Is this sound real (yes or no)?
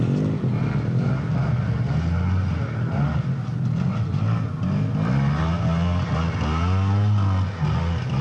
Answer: yes